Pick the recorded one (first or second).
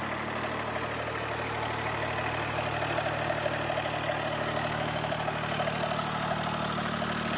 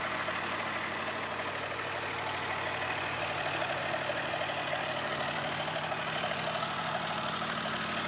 first